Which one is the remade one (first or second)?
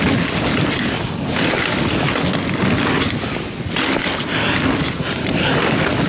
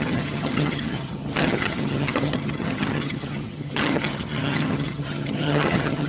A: second